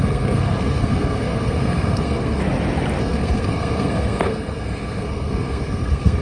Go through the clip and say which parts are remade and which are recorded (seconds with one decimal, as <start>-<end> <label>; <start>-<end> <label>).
0.0-2.4 remade; 2.4-3.0 recorded; 3.0-6.2 remade